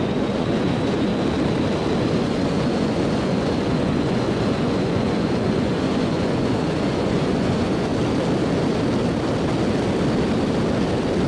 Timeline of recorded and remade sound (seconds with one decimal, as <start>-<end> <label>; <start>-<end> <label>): 0.0-1.1 remade; 1.1-2.0 recorded; 2.0-7.9 remade; 7.9-11.3 recorded